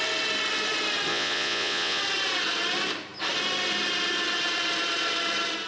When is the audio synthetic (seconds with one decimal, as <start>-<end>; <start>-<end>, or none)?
1.1-2.0